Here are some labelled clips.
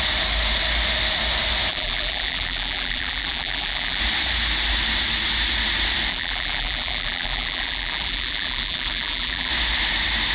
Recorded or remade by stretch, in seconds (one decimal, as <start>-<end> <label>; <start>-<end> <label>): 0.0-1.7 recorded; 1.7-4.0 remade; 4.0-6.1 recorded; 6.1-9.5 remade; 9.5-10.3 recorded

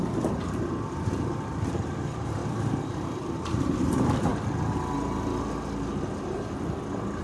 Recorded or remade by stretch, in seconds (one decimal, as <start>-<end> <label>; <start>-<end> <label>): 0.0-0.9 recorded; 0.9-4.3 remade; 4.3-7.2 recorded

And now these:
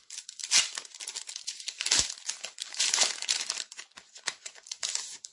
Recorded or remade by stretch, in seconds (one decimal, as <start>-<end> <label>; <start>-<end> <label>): 0.0-0.4 remade; 0.4-1.4 recorded; 1.4-5.3 remade

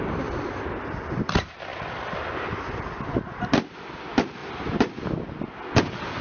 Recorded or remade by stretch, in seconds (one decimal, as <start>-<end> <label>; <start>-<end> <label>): 0.0-1.7 recorded; 1.7-3.6 remade; 3.6-4.4 recorded; 4.4-5.2 remade; 5.2-6.2 recorded